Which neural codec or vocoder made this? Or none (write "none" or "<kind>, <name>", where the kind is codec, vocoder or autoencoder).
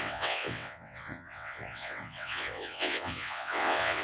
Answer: vocoder, WaveNeXt